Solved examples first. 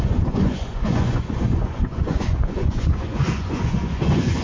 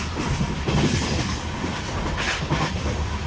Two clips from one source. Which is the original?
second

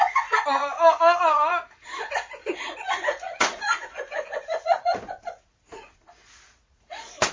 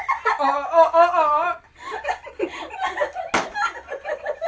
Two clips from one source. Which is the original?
second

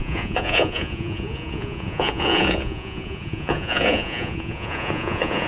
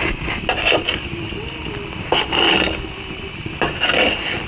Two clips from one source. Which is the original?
second